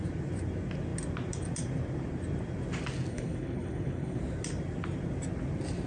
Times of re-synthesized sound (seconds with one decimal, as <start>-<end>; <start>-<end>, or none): 3.1-4.2